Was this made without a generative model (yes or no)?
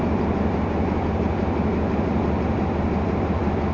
yes